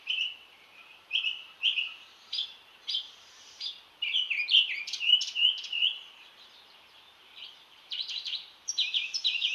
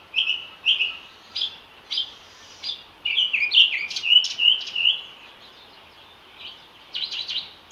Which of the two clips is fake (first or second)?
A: first